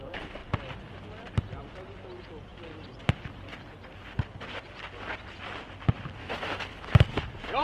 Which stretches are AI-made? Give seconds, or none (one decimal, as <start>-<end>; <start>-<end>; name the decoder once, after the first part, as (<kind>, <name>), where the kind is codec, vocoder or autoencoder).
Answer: 6.2-7.0 (autoencoder, DAC-VAE)